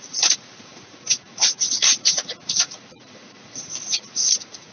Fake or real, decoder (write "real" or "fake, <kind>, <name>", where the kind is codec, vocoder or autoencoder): fake, vocoder, Vocos